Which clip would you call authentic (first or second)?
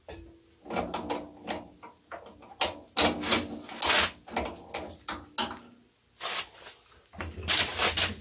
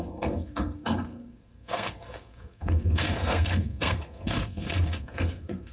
first